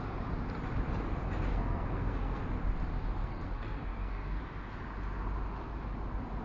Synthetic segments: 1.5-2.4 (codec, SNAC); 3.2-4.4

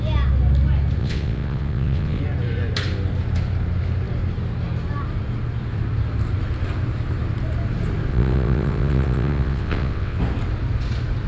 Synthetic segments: 1.0-2.2 (vocoder, WaveNeXt); 8.1-10.2

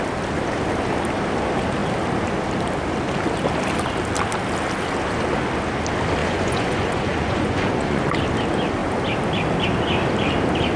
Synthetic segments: 6.2-8.1 (vocoder, Vocos)

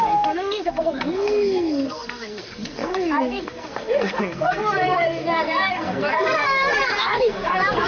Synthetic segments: 0.0-7.9 (codec, SNAC)

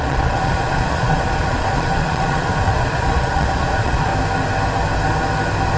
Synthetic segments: 0.0-4.1 (vocoder, Vocos)

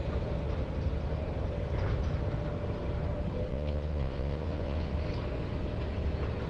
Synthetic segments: 3.5-4.9 (vocoder, Vocos)

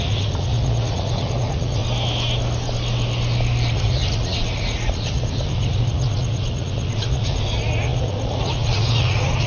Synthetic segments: 0.0-1.8 (vocoder, Vocos); 3.7-9.5